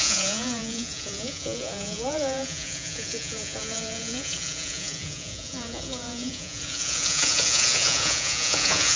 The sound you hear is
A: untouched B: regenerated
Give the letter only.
B